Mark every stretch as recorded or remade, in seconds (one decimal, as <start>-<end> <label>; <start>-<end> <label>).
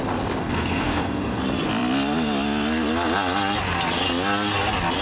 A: 0.0-0.4 recorded; 0.4-1.4 remade; 1.4-5.0 recorded